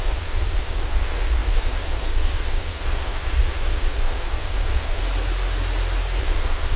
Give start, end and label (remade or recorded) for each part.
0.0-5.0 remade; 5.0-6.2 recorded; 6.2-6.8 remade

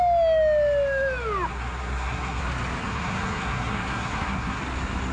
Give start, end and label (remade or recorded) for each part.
0.0-1.5 recorded; 1.5-2.4 remade; 2.4-2.8 recorded; 2.8-4.6 remade; 4.6-5.1 recorded

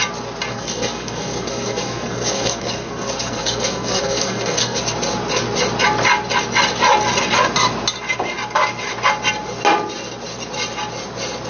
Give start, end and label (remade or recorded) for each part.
0.0-0.5 recorded; 0.5-4.8 remade; 4.8-11.5 recorded

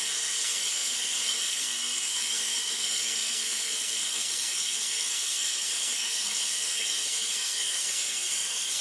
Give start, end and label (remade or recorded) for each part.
0.0-8.8 remade

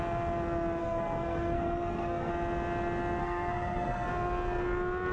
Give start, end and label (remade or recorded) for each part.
0.0-0.8 recorded; 0.8-2.3 remade; 2.3-3.2 recorded; 3.2-4.1 remade; 4.1-5.1 recorded

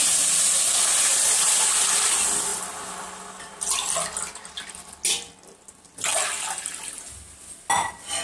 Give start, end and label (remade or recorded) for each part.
0.0-8.2 recorded

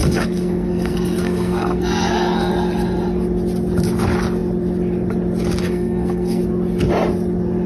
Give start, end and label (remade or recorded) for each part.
0.0-2.5 remade; 2.5-5.6 recorded; 5.6-6.4 remade; 6.4-7.7 recorded

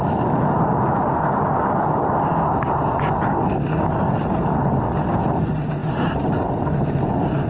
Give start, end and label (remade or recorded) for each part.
0.0-7.5 recorded